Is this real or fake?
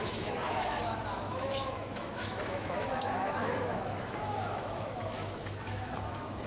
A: fake